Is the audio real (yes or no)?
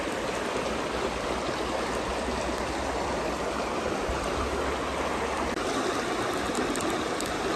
yes